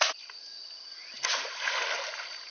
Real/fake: real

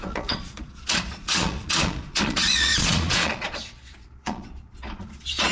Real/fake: fake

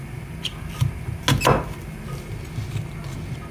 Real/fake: real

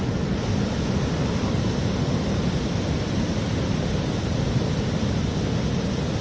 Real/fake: real